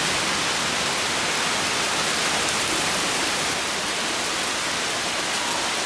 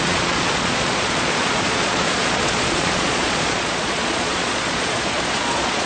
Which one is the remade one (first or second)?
second